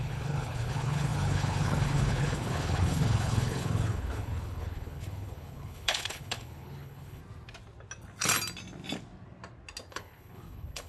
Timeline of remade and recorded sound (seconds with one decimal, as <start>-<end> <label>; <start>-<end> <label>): 0.0-7.2 remade; 7.2-9.9 recorded; 9.9-10.9 remade

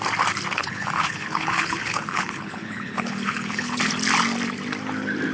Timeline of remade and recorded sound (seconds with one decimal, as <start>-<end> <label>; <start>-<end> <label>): 0.0-0.6 recorded; 0.6-3.8 remade; 3.8-5.3 recorded

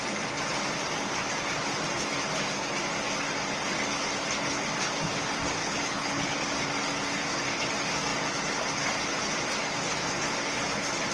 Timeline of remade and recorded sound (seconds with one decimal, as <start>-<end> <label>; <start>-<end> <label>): 0.0-5.6 recorded; 5.6-6.3 remade; 6.3-11.1 recorded

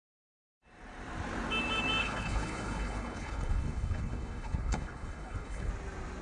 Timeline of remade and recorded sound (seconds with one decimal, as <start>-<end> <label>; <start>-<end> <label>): 0.0-2.0 recorded; 2.0-5.7 remade; 5.7-6.2 recorded

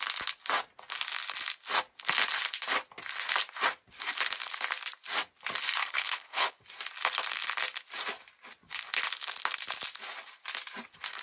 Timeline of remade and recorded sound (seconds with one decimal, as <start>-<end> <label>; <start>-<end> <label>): 0.0-5.8 recorded; 5.8-6.6 remade; 6.6-11.2 recorded

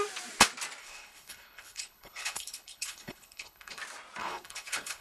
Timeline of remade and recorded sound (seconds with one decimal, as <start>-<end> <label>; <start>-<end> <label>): 0.0-0.8 recorded; 0.8-3.8 remade; 3.8-4.2 recorded; 4.2-5.0 remade

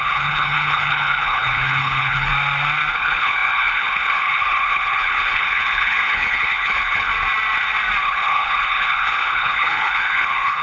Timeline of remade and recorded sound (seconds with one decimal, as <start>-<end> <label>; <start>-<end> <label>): 0.0-2.3 remade; 2.3-2.9 recorded; 2.9-7.1 remade; 7.1-8.0 recorded; 8.0-10.6 remade